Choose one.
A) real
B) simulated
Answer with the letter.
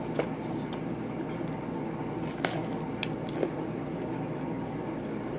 A